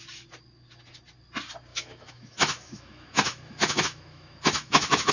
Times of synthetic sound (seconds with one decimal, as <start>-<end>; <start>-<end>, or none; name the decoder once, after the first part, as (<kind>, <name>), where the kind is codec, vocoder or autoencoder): 1.7-5.1 (autoencoder, DAC-VAE)